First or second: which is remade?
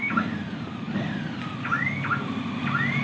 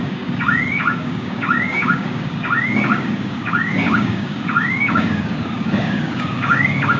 second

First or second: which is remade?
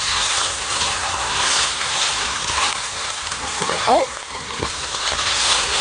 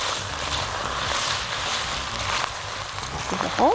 first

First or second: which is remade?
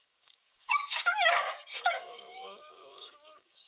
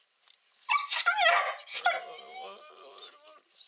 first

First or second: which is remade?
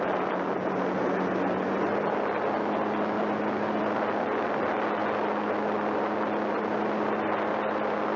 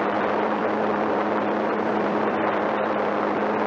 second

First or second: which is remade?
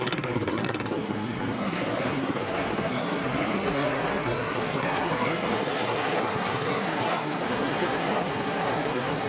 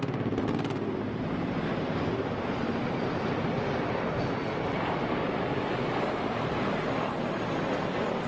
first